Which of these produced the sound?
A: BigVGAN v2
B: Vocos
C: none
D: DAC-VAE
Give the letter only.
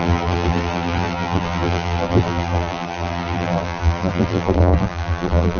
A